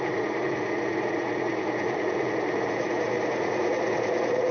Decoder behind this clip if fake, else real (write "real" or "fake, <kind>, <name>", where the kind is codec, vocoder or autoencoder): fake, vocoder, Vocos